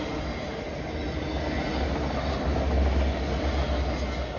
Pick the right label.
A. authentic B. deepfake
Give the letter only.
A